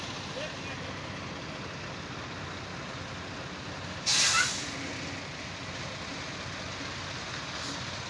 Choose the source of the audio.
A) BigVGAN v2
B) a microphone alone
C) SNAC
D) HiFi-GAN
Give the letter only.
B